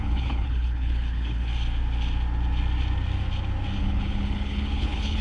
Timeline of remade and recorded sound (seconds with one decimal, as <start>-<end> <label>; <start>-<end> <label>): 0.0-1.5 remade; 1.5-3.8 recorded; 3.8-5.2 remade